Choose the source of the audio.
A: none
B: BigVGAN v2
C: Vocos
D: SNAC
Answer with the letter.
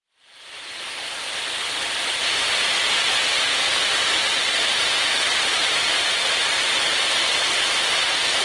A